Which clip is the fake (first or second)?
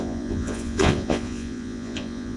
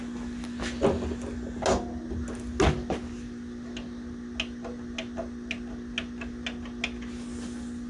first